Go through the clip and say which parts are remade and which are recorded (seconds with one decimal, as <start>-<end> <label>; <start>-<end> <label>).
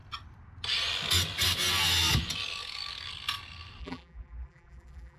0.0-3.8 recorded; 3.8-5.2 remade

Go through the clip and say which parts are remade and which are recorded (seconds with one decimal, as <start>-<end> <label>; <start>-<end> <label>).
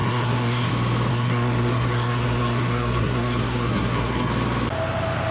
0.0-0.7 remade; 0.7-1.1 recorded; 1.1-4.3 remade; 4.3-5.3 recorded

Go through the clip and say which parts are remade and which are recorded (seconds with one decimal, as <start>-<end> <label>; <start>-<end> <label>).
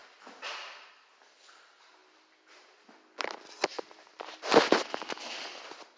0.0-0.8 remade; 0.8-6.0 recorded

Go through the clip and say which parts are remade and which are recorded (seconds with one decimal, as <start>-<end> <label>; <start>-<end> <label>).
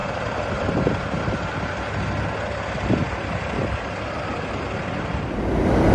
0.0-5.9 recorded